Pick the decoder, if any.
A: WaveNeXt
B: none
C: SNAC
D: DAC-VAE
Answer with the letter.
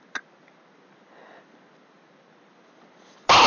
B